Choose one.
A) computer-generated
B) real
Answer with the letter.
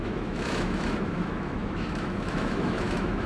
A